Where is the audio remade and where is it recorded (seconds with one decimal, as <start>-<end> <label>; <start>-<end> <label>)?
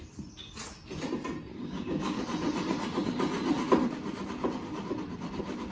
0.0-1.5 recorded; 1.5-2.2 remade; 2.2-5.7 recorded